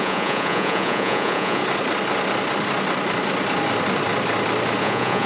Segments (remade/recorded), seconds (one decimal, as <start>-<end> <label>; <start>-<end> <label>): 0.0-1.6 remade; 1.6-4.8 recorded; 4.8-5.3 remade